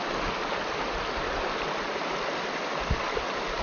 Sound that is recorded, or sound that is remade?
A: recorded